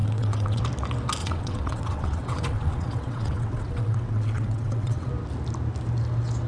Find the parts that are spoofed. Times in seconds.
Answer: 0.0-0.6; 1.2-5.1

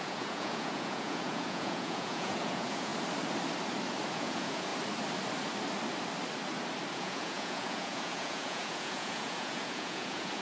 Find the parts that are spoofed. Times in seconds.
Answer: 0.0-2.9; 4.1-4.7; 6.9-10.4